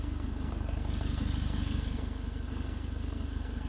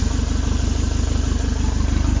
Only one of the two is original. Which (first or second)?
second